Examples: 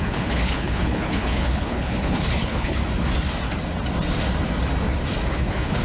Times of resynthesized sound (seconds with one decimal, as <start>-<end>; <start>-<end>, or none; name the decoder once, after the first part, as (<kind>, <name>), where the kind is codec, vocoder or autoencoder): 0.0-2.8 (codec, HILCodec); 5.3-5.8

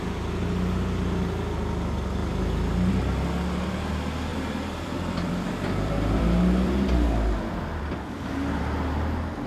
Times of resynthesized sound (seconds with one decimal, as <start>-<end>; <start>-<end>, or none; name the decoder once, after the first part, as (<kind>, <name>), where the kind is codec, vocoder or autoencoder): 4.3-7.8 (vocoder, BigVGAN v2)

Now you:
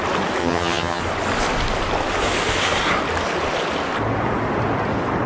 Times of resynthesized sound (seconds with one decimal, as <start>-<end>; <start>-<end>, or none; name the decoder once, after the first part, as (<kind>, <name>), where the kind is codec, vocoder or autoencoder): 0.4-1.0 (vocoder, HiFi-GAN)

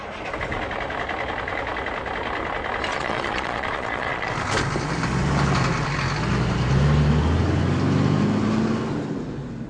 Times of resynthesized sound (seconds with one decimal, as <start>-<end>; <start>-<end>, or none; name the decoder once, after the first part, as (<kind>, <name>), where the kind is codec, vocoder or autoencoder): 2.9-4.3 (vocoder, Vocos)